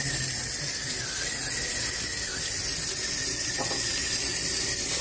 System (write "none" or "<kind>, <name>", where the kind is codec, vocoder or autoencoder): none